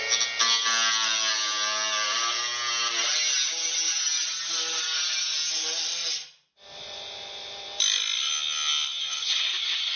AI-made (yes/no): no